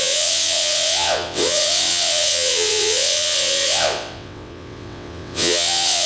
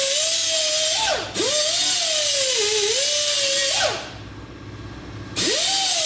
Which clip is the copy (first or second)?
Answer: first